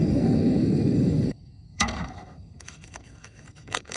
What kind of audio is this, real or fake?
fake